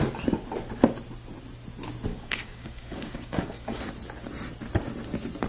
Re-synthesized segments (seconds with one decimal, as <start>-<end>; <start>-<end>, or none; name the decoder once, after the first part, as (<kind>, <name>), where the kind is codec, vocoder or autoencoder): 2.1-3.8 (codec, DAC)

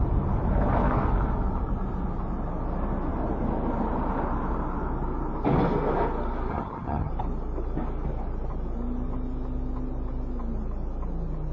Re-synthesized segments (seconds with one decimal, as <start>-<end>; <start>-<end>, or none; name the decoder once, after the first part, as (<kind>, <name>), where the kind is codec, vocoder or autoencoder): 6.5-7.1 (vocoder, HiFi-GAN)

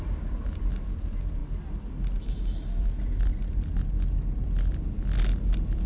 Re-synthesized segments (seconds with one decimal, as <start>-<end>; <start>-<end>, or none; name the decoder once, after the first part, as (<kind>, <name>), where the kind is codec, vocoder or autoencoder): none